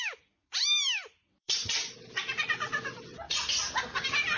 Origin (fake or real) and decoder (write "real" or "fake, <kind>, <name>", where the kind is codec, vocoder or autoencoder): fake, vocoder, BigVGAN v2